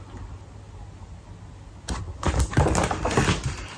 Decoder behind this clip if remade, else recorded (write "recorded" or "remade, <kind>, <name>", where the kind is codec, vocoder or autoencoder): recorded